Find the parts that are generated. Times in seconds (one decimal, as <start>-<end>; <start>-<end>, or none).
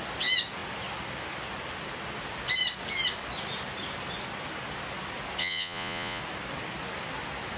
5.4-6.2